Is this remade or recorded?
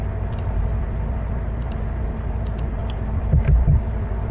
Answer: recorded